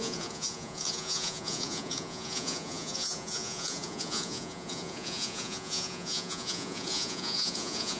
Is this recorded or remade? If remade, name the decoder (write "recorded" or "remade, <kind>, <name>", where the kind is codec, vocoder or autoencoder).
remade, vocoder, Vocos